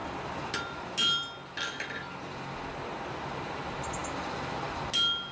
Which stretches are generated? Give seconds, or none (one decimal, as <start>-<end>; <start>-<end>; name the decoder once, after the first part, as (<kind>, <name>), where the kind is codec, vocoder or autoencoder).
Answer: none